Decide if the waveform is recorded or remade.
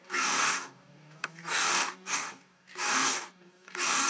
remade